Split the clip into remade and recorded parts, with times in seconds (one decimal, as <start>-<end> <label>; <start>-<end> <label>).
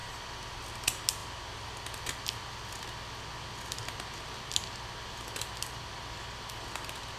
0.0-0.7 remade; 0.7-7.2 recorded